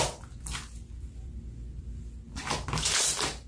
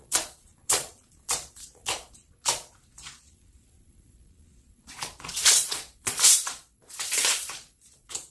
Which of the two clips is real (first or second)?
first